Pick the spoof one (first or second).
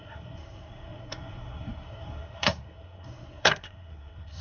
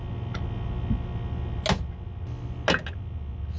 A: first